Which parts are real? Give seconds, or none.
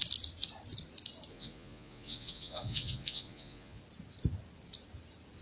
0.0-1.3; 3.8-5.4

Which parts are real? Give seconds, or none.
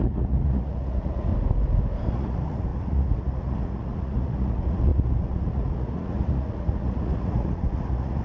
1.3-2.1